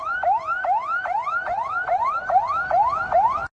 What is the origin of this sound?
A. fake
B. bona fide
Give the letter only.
B